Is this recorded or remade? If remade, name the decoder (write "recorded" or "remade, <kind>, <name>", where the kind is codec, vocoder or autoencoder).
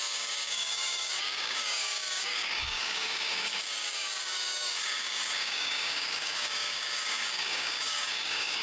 remade, codec, DAC